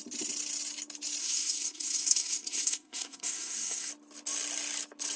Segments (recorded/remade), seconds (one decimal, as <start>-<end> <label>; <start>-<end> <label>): 0.0-1.2 recorded; 1.2-3.9 remade; 3.9-5.2 recorded